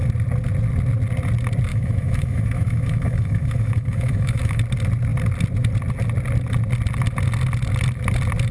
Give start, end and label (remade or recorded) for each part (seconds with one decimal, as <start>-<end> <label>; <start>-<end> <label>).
0.0-1.7 recorded; 1.7-4.6 remade; 4.6-8.5 recorded